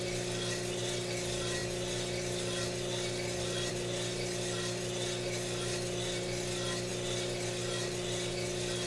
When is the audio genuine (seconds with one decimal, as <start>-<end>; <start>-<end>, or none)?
0.0-8.9